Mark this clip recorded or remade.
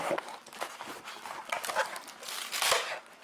recorded